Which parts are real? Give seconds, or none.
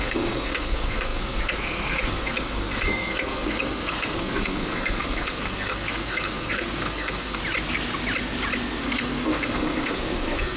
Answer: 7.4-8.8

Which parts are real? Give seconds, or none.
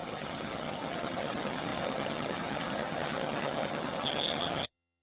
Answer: none